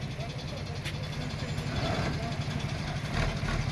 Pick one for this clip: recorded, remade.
recorded